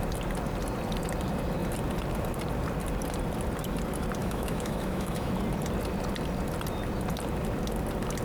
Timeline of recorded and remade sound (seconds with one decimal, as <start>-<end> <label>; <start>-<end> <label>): 0.0-4.2 recorded; 4.2-5.3 remade; 5.3-8.2 recorded